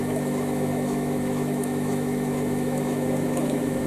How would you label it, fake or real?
fake